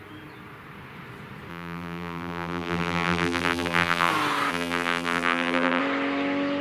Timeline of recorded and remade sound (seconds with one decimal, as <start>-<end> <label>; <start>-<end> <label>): 0.0-1.5 recorded; 1.5-4.1 remade; 4.1-4.5 recorded; 4.5-5.8 remade; 5.8-6.6 recorded